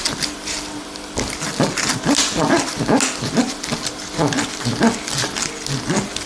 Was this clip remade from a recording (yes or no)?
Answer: no